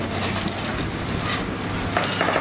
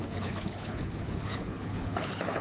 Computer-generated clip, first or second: second